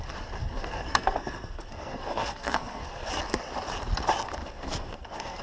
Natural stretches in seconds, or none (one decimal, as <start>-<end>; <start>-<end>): 0.0-0.4; 3.1-4.4